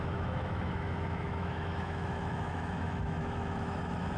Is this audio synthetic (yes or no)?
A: yes